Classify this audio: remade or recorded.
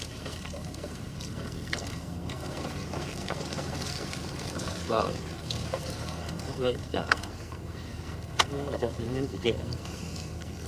remade